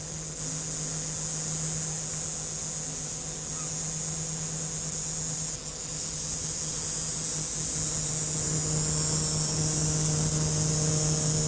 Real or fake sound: real